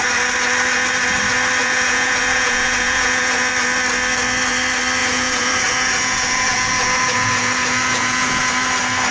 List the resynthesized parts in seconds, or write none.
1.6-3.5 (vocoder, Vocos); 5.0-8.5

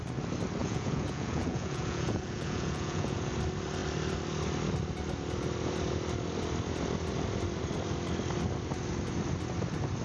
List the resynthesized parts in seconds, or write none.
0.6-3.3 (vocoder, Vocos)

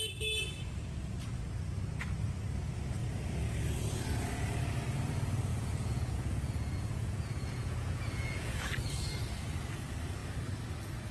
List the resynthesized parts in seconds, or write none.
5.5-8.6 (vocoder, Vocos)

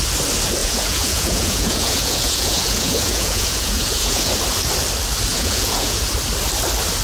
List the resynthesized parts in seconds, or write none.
0.6-4.3 (vocoder, Vocos); 5.3-6.0

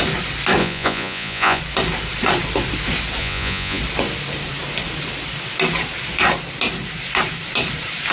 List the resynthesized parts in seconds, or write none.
0.6-1.6 (vocoder, Vocos); 3.2-3.8

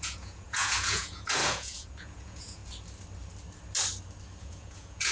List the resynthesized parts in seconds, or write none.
0.0-2.6 (vocoder, Vocos); 4.4-5.1